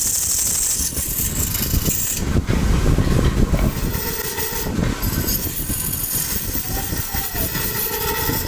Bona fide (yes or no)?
yes